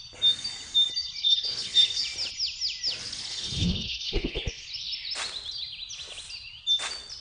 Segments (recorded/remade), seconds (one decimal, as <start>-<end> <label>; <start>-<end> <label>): 0.0-1.2 recorded; 1.2-2.0 remade; 2.0-3.3 recorded; 3.3-4.7 remade; 4.7-7.2 recorded

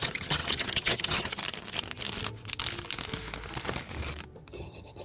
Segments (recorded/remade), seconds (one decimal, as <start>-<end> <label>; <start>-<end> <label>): 0.0-1.4 remade; 1.4-4.4 recorded; 4.4-5.0 remade

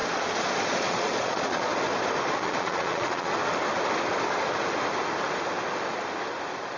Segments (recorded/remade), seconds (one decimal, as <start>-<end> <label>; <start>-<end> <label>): 0.0-1.7 remade; 1.7-2.3 recorded; 2.3-3.4 remade; 3.4-6.8 recorded

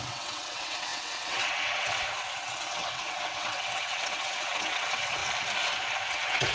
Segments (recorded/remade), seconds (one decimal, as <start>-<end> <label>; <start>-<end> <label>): 0.0-5.2 remade; 5.2-6.1 recorded; 6.1-6.5 remade

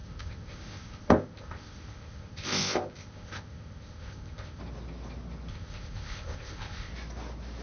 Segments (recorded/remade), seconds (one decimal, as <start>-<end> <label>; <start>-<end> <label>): 0.0-4.6 remade; 4.6-5.5 recorded; 5.5-6.9 remade; 6.9-7.6 recorded

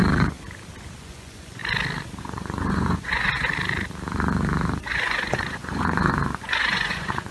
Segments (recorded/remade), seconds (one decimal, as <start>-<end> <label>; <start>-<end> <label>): 0.0-1.0 recorded; 1.0-1.6 remade; 1.6-2.2 recorded; 2.2-3.5 remade; 3.5-4.8 recorded; 4.8-7.3 remade

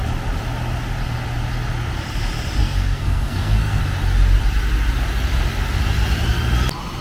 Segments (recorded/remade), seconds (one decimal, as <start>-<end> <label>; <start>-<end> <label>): 0.0-2.6 recorded; 2.6-3.8 remade; 3.8-7.0 recorded

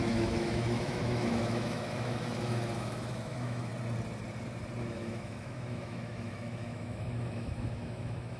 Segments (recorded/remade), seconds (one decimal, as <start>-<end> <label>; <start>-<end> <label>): 0.0-3.7 remade; 3.7-4.9 recorded; 4.9-8.4 remade